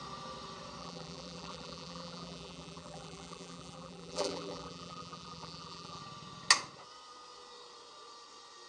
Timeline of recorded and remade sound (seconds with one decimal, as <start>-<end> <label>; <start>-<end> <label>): 0.0-0.8 recorded; 0.8-6.0 remade; 6.0-8.7 recorded